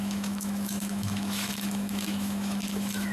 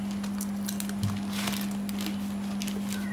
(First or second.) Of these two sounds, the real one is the second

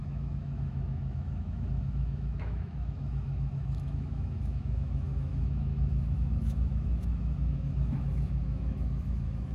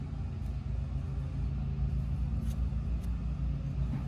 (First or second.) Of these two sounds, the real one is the second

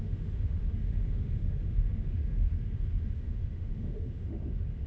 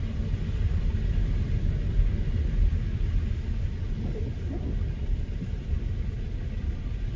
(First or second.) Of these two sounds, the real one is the second